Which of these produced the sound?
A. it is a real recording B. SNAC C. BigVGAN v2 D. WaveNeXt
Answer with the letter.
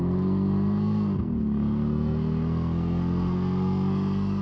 B